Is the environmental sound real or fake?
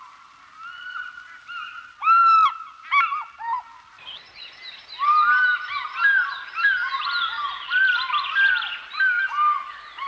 real